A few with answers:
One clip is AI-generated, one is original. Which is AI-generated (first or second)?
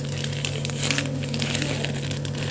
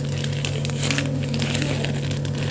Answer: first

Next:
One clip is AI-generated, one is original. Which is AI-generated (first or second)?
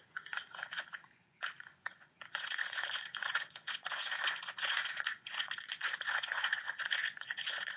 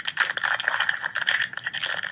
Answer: first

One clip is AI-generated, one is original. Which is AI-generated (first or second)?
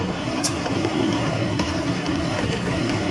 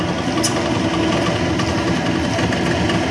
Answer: first